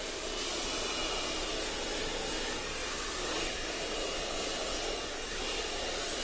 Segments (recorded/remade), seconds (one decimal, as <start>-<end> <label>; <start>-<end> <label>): 0.0-2.8 recorded; 2.8-5.8 remade; 5.8-6.2 recorded